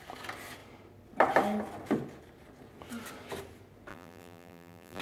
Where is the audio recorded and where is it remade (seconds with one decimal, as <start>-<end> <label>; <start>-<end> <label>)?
0.0-3.9 recorded; 3.9-5.0 remade